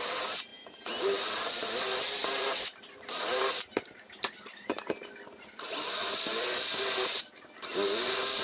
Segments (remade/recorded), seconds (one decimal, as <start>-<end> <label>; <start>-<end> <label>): 0.0-0.5 recorded; 0.5-1.4 remade; 1.4-2.2 recorded; 2.2-4.7 remade; 4.7-8.4 recorded